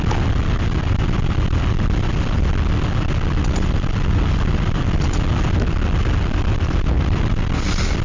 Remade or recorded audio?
recorded